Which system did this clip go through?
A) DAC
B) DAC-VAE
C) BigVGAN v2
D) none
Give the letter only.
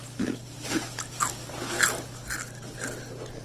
D